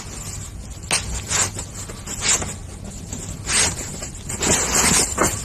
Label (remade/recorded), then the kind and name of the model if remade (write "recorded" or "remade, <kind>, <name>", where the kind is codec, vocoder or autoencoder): recorded